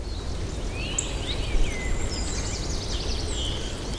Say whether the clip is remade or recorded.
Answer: recorded